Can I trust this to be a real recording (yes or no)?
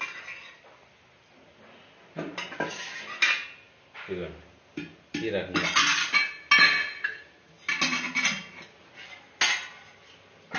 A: yes